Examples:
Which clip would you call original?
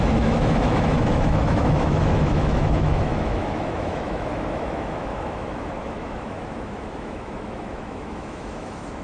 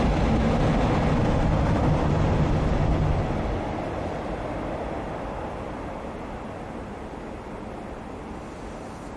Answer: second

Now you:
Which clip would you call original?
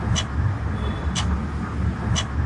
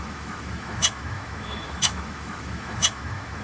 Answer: first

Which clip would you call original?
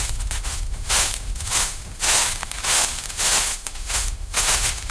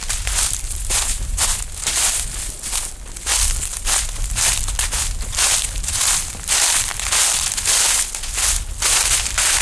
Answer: second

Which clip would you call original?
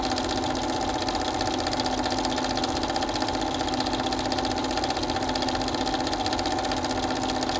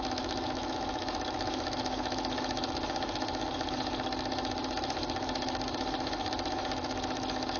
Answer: first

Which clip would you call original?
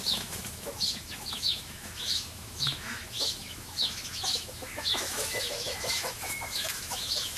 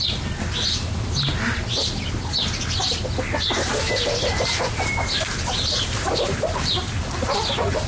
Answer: second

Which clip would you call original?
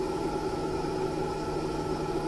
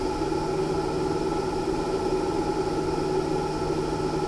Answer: second